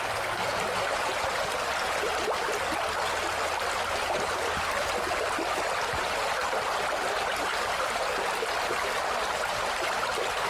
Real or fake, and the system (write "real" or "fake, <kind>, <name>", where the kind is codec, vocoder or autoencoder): real